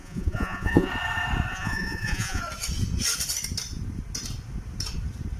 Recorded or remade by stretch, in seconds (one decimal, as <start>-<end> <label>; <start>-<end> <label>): 0.0-0.9 remade; 0.9-1.5 recorded; 1.5-2.4 remade; 2.4-5.4 recorded